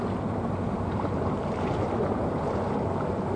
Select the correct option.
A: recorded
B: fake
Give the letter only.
A